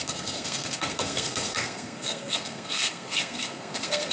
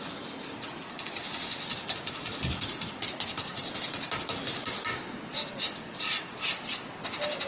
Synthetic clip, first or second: first